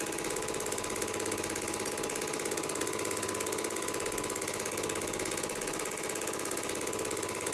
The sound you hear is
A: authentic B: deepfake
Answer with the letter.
A